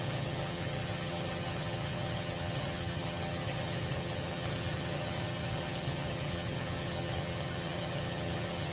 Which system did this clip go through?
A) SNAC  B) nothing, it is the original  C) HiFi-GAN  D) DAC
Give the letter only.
C